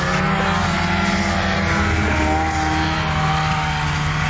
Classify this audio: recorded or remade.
recorded